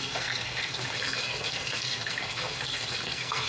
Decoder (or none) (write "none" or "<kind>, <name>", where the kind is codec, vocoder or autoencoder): codec, SNAC